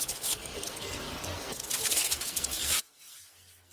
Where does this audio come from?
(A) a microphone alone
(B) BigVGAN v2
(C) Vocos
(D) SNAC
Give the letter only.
D